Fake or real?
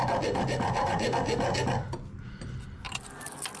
real